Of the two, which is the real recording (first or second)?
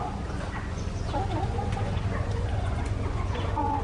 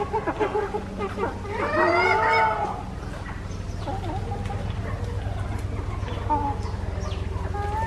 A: second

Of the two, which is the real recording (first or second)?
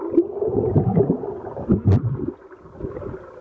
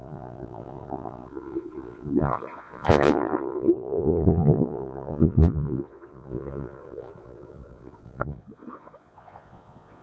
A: first